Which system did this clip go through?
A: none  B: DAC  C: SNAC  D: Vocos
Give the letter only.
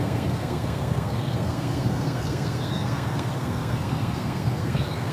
C